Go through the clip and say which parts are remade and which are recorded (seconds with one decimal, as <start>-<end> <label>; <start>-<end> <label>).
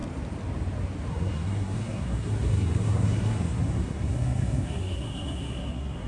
0.0-1.1 recorded; 1.1-6.1 remade